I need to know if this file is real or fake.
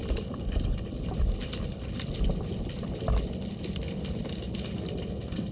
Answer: real